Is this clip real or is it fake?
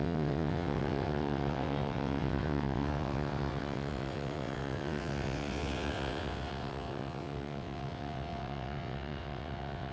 fake